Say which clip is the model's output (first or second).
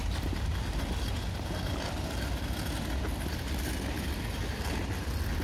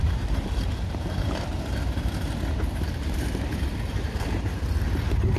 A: second